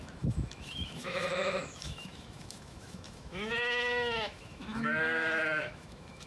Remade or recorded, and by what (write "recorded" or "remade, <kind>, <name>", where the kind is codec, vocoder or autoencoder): remade, autoencoder, DAC-VAE